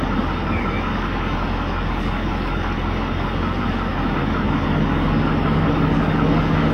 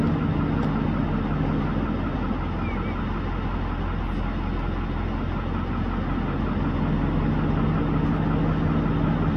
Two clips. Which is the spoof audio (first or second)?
first